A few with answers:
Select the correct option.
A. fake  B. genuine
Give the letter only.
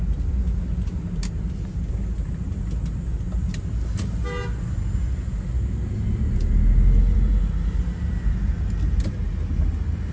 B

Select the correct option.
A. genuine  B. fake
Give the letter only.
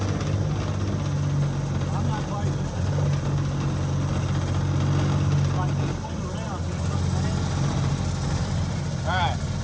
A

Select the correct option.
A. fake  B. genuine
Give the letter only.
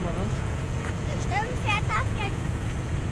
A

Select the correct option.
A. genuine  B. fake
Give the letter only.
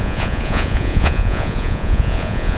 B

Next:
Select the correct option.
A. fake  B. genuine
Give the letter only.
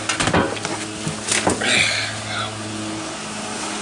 B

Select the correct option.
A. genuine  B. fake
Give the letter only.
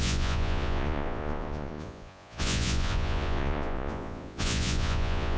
B